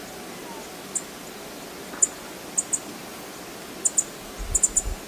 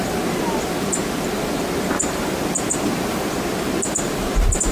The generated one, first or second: second